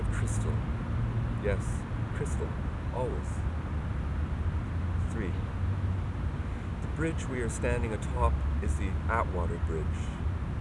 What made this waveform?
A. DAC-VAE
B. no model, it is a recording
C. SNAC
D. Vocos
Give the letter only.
B